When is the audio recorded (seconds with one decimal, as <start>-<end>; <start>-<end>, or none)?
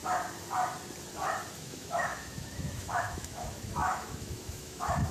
0.0-1.6